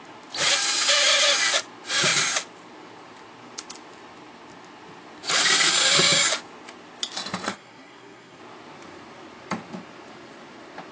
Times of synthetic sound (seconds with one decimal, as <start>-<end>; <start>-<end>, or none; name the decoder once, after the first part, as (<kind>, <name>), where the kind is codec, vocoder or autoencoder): 7.5-8.4 (codec, SNAC)